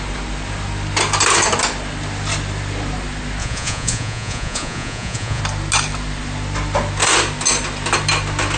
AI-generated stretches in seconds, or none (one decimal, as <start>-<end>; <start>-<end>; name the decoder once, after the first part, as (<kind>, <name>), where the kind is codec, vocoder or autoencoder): 3.4-5.4 (vocoder, Vocos)

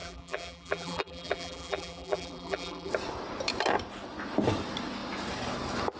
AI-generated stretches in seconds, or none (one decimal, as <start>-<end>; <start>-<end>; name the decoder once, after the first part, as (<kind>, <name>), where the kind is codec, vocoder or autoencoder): 0.0-2.9 (vocoder, BigVGAN v2)

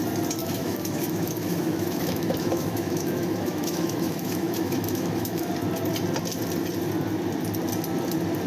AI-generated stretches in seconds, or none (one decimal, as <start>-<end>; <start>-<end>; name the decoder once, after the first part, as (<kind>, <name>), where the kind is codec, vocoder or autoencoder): 0.4-5.5 (autoencoder, DAC-VAE)

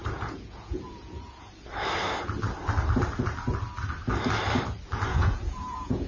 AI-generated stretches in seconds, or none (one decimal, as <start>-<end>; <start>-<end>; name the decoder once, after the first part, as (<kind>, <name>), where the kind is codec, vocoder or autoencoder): 0.0-1.5 (vocoder, Vocos); 5.1-6.1

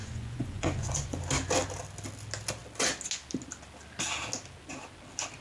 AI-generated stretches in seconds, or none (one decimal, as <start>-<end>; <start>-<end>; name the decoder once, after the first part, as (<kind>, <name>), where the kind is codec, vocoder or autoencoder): 0.0-1.2 (vocoder, Vocos)

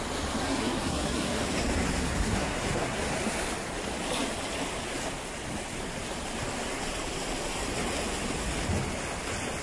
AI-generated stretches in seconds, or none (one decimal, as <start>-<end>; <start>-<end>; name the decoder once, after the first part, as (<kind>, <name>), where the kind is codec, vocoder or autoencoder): 0.4-1.4 (codec, SNAC); 2.0-3.0

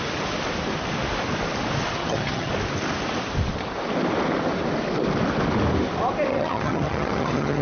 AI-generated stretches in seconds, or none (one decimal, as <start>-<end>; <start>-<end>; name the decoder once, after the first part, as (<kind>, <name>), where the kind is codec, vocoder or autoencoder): 2.0-2.5 (vocoder, HiFi-GAN); 6.3-7.6

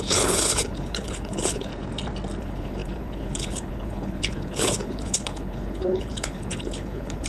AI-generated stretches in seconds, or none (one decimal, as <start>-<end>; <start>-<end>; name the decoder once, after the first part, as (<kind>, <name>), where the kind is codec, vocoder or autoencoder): 0.0-1.7 (codec, HILCodec); 2.4-7.3